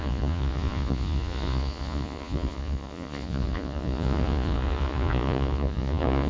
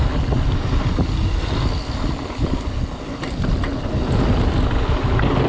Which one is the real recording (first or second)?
second